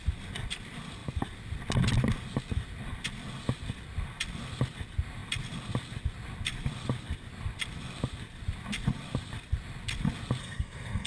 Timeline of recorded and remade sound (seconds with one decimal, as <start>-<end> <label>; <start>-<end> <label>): 0.0-10.4 recorded; 10.4-11.1 remade